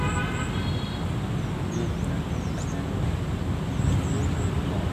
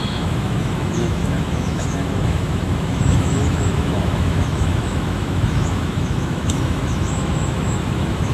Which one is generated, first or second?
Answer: second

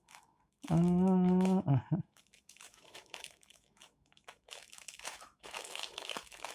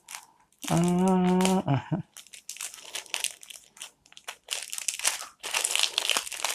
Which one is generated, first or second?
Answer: first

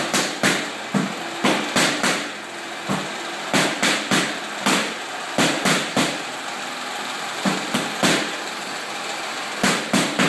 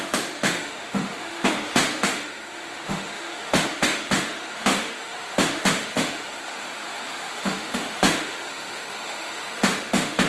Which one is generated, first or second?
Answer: second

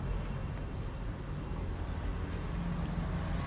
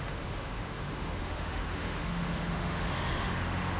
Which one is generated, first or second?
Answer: second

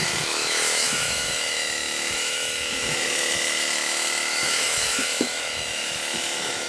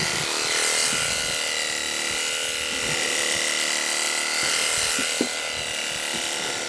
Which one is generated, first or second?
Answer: first